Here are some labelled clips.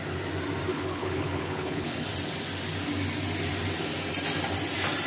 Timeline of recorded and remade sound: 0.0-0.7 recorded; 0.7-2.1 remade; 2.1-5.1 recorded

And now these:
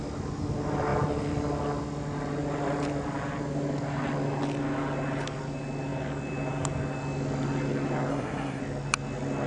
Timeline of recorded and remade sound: 0.0-8.1 recorded; 8.1-8.6 remade; 8.6-9.5 recorded

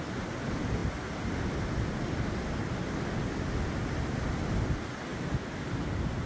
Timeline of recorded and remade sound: 0.0-5.1 recorded; 5.1-6.3 remade